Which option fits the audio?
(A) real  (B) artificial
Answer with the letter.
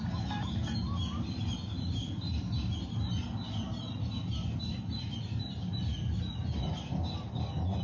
A